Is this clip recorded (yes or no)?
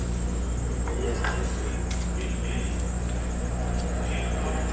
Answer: yes